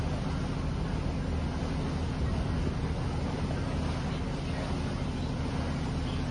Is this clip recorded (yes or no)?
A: yes